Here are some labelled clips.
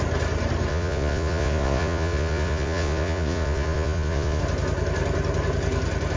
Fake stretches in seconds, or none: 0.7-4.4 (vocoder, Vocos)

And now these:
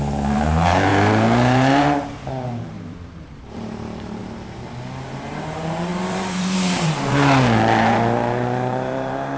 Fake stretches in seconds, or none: 0.0-4.2 (vocoder, BigVGAN v2); 5.3-9.4